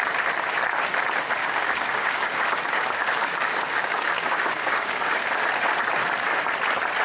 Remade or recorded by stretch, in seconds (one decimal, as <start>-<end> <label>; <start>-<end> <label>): 0.0-1.4 recorded; 1.4-5.2 remade; 5.2-7.0 recorded